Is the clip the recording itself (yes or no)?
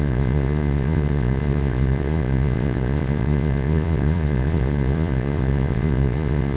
no